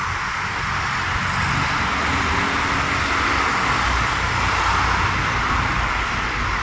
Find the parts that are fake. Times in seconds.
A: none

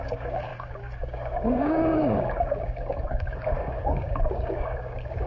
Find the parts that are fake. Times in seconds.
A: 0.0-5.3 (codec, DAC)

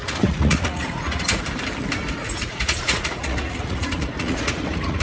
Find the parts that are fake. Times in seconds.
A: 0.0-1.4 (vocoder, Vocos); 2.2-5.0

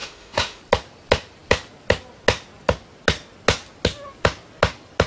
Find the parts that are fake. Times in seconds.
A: 0.0-0.6 (autoencoder, DAC-VAE)